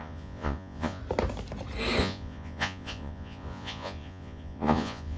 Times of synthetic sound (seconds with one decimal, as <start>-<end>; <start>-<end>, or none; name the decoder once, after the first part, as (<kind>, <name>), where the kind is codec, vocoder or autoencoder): 0.0-1.0 (vocoder, Vocos); 2.0-5.2